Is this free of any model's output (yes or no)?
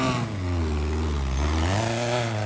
yes